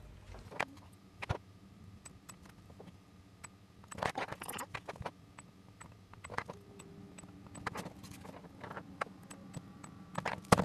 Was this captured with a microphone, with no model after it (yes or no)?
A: yes